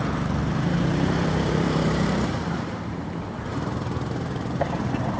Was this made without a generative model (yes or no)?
no